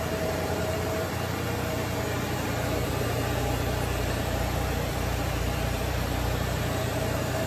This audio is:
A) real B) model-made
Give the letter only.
B